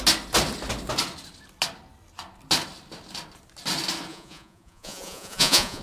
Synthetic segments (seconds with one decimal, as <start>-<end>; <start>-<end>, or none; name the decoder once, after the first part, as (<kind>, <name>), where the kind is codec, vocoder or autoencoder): 4.1-5.8 (vocoder, Vocos)